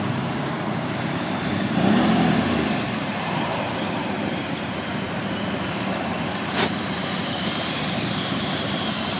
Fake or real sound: fake